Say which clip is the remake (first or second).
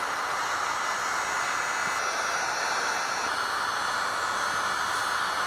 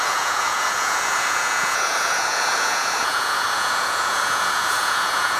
second